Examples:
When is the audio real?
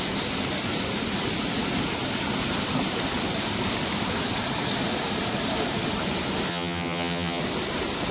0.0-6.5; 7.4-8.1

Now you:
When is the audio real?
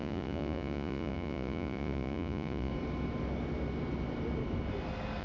2.7-5.2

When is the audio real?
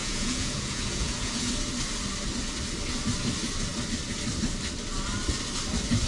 1.5-6.1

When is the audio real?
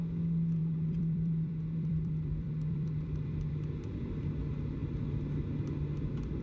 0.0-0.6; 3.5-6.4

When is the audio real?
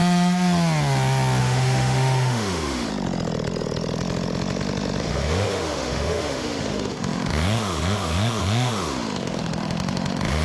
0.0-1.4; 2.9-5.0